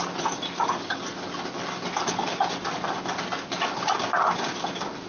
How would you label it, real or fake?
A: real